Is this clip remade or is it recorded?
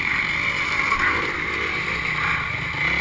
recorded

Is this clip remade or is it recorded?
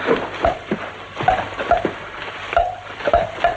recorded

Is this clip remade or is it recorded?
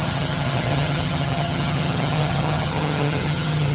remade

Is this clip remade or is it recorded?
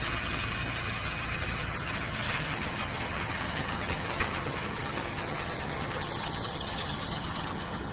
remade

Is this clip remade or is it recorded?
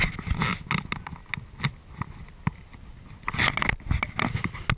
recorded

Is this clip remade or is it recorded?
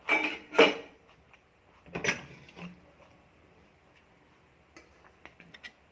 recorded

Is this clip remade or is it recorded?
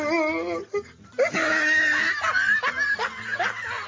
recorded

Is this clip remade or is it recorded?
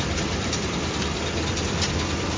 recorded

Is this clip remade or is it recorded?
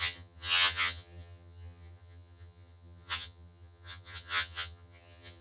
remade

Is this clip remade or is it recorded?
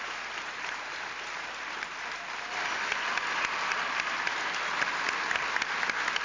recorded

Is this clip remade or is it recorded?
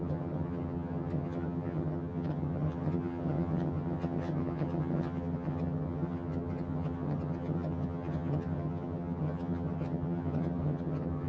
remade